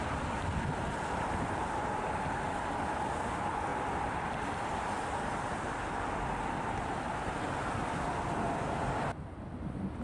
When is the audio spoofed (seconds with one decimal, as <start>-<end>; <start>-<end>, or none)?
0.0-2.5; 3.7-8.9